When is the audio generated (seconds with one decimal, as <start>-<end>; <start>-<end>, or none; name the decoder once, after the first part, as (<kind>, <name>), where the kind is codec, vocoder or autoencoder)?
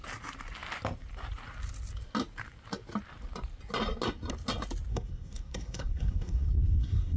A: 4.9-7.2 (codec, SNAC)